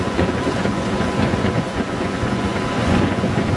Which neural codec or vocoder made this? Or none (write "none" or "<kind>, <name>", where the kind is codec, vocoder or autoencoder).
vocoder, Vocos